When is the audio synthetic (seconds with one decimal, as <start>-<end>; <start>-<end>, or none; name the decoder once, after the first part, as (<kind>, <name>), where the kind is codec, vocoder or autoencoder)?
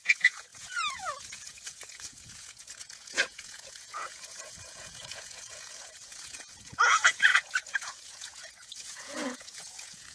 0.0-10.1 (vocoder, Vocos)